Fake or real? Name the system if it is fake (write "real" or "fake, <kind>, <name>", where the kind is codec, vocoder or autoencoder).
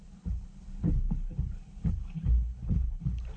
fake, codec, HILCodec